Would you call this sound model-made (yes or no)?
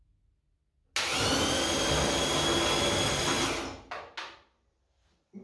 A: no